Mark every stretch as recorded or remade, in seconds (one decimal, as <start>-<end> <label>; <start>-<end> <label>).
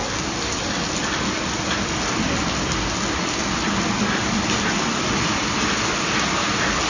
0.0-6.9 recorded